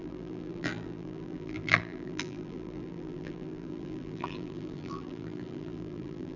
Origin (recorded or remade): remade